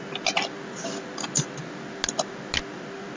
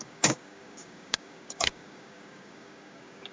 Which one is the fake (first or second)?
second